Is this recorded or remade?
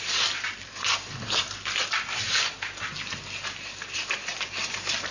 recorded